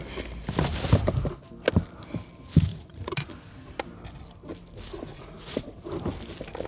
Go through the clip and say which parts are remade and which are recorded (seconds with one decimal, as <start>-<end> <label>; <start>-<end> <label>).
0.0-2.7 recorded; 2.7-3.3 remade; 3.3-5.1 recorded; 5.1-5.9 remade; 5.9-6.7 recorded